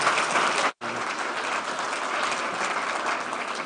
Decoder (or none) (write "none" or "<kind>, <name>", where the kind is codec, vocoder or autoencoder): none